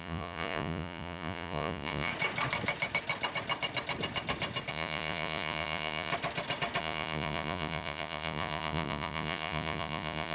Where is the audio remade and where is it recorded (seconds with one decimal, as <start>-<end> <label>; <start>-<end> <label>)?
0.0-2.1 remade; 2.1-4.7 recorded; 4.7-6.1 remade; 6.1-6.8 recorded; 6.8-10.3 remade